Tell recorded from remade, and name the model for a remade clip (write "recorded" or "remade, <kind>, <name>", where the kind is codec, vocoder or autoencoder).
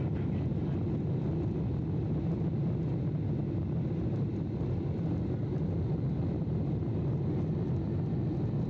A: recorded